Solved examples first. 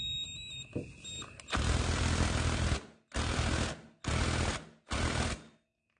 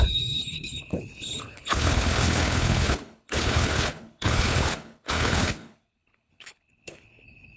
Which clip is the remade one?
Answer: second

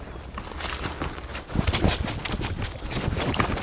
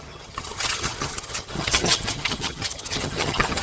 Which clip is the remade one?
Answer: second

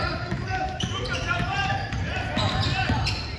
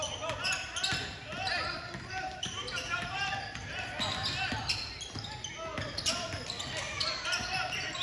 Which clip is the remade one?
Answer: first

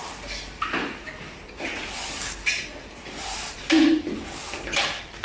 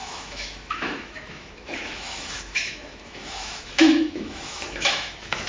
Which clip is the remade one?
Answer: second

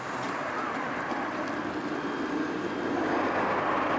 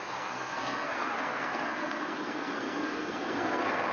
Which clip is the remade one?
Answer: second